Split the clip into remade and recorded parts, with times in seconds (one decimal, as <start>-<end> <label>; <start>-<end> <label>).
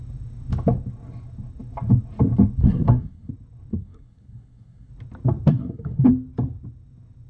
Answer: 0.0-2.6 recorded; 2.6-3.3 remade; 3.3-3.7 recorded; 3.7-4.9 remade; 4.9-5.5 recorded; 5.5-6.1 remade; 6.1-7.3 recorded